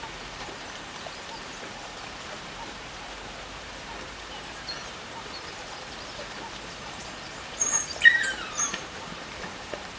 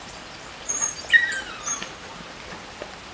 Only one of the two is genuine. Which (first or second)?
second